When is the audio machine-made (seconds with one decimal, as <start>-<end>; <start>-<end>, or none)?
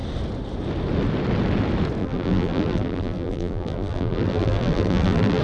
2.0-5.4